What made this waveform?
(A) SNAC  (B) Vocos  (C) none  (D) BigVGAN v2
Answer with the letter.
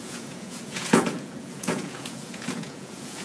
B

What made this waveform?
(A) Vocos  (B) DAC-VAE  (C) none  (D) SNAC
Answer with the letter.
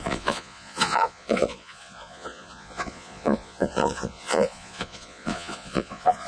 A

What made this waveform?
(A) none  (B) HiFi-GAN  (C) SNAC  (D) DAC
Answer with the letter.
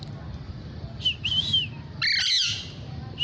A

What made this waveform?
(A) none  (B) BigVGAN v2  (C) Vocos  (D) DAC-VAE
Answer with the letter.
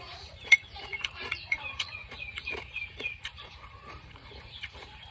C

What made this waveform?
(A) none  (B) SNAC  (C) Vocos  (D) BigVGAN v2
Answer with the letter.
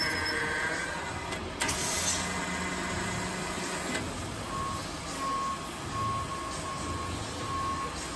A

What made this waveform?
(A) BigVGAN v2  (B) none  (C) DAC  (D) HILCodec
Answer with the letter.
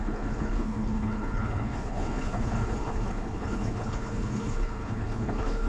D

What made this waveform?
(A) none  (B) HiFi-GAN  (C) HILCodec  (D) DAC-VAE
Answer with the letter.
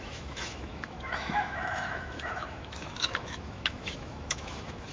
D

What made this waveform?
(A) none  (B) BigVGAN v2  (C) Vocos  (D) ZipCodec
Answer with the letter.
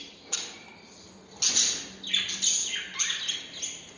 A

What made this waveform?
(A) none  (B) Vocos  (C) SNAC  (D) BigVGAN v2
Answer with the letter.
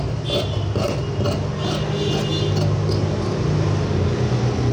A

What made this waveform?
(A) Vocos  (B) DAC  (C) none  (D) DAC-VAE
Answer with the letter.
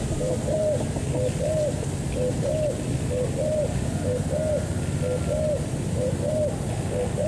C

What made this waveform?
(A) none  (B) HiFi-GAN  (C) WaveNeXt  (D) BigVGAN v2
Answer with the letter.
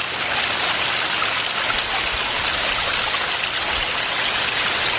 A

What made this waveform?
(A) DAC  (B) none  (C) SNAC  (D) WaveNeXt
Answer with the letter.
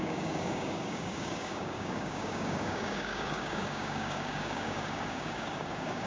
A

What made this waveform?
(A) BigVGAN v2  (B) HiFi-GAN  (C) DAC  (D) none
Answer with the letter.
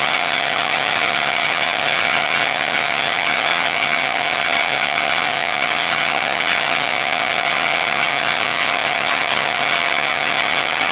B